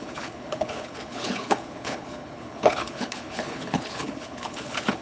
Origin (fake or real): fake